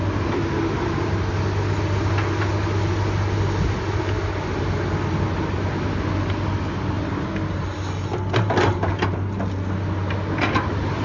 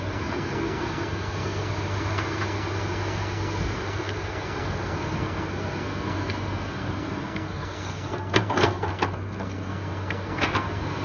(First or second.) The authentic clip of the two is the first